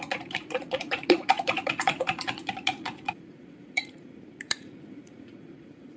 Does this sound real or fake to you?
fake